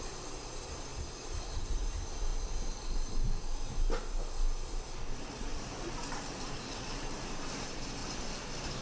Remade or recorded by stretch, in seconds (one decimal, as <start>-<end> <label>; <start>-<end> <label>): 0.0-2.3 remade; 2.3-5.2 recorded; 5.2-8.8 remade